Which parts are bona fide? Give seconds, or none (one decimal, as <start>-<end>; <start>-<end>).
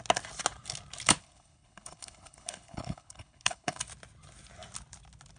0.0-1.2; 3.8-5.4